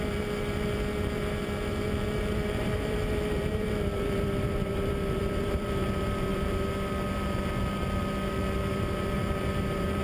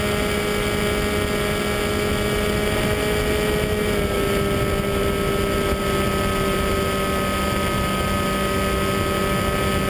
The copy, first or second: first